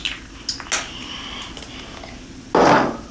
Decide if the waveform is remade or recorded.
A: recorded